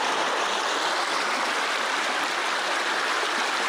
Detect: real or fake real